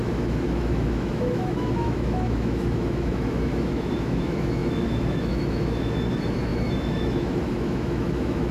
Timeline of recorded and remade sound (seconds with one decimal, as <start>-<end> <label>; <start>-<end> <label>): 0.0-8.5 remade